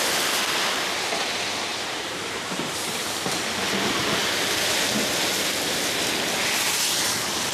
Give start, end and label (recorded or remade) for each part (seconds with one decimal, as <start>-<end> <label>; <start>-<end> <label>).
0.0-1.7 recorded; 1.7-3.4 remade; 3.4-7.5 recorded